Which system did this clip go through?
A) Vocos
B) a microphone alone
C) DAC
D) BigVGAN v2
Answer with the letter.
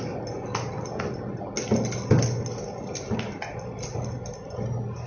B